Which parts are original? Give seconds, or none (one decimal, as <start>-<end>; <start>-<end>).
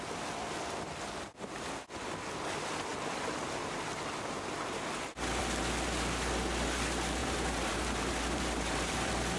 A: 0.0-7.2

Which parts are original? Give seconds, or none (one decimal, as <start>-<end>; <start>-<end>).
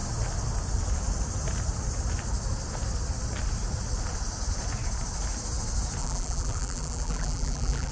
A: 0.0-6.0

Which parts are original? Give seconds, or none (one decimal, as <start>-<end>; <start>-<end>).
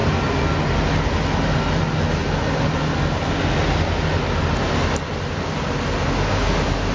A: 0.0-6.9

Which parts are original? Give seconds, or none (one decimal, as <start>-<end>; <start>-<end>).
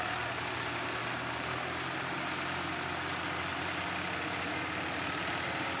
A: 0.0-5.8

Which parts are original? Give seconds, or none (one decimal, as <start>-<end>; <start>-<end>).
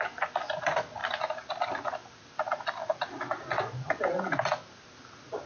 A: 0.0-5.5